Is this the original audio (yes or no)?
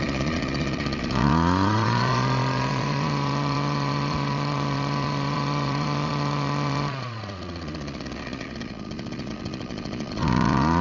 no